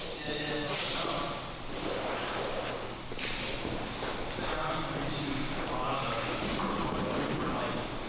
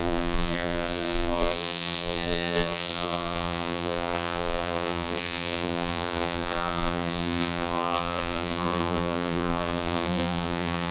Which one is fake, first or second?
second